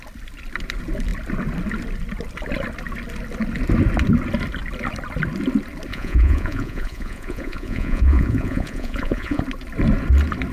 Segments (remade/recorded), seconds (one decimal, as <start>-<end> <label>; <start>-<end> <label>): 0.0-5.9 recorded; 5.9-9.4 remade; 9.4-10.5 recorded

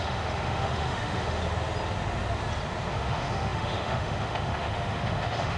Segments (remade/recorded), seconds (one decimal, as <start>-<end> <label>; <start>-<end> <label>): 0.0-1.4 remade; 1.4-2.9 recorded; 2.9-5.6 remade

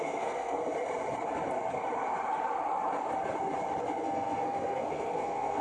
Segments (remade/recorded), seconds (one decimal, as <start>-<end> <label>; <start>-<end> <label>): 0.0-0.6 remade; 0.6-3.9 recorded; 3.9-5.6 remade

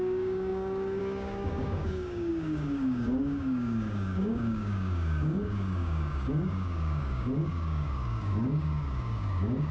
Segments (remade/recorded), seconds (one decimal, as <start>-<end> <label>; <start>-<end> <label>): 0.0-9.7 remade